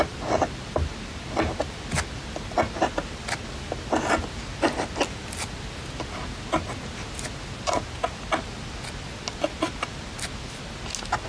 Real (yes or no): yes